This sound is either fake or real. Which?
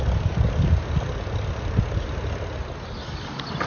real